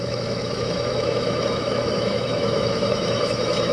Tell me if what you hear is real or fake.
fake